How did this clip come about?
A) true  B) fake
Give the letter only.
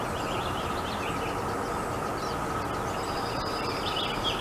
A